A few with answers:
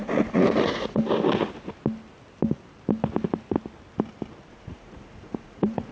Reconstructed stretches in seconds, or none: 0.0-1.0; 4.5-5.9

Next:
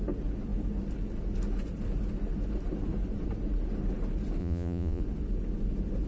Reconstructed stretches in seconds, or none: 4.4-5.0

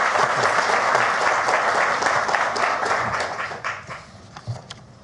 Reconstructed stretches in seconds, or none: 2.8-4.2

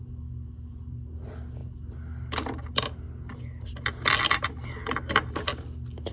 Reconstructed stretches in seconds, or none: none

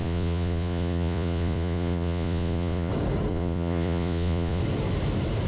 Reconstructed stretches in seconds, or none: 0.0-2.9; 3.3-4.6